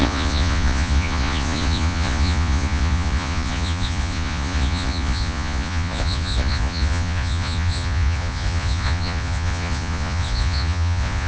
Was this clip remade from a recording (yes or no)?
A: yes